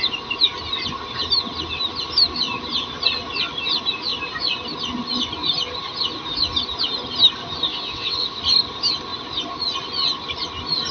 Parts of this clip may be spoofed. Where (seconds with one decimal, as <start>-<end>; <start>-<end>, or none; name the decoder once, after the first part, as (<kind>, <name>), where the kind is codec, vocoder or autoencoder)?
7.7-8.4 (vocoder, WaveNeXt)